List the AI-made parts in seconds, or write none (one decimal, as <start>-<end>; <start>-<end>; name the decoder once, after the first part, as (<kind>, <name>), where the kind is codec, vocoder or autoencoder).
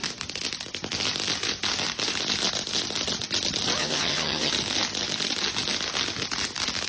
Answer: 3.8-4.5 (vocoder, HiFi-GAN)